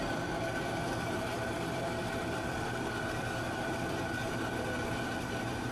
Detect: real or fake fake